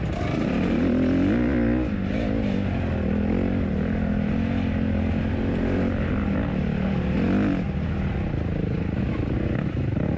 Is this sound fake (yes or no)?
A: no